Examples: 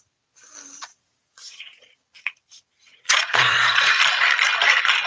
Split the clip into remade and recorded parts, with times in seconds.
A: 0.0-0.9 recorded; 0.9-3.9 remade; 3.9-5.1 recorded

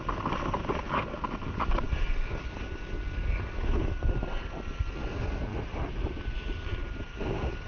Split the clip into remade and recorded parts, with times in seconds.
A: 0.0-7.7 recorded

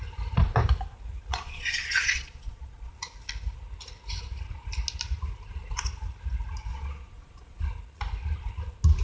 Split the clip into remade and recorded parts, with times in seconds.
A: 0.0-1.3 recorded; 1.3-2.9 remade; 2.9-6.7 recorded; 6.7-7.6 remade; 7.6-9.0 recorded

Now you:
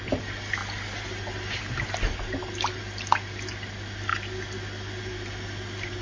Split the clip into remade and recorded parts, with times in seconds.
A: 0.0-6.0 recorded

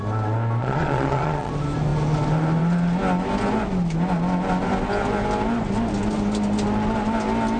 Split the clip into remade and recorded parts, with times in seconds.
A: 0.0-0.6 recorded; 0.6-1.5 remade; 1.5-7.6 recorded

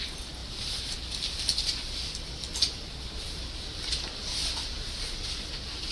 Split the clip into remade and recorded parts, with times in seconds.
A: 0.0-5.9 recorded

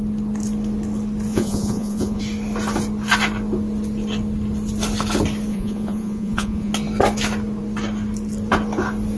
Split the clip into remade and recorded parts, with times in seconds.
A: 0.0-1.3 recorded; 1.3-2.2 remade; 2.2-5.5 recorded; 5.5-6.7 remade; 6.7-9.2 recorded

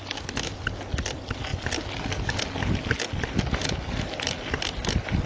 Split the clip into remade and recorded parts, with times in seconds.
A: 0.0-5.3 recorded